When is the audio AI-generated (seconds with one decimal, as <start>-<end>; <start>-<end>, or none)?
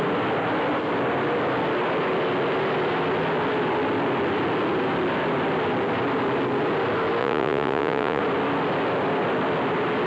7.2-8.2